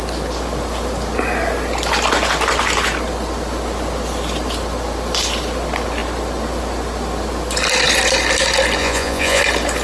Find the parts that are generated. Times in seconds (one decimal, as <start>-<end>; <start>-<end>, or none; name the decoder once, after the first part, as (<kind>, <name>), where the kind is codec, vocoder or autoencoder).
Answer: 8.8-9.4 (vocoder, Vocos)